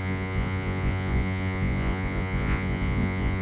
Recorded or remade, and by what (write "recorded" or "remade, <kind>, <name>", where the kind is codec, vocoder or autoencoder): remade, vocoder, Vocos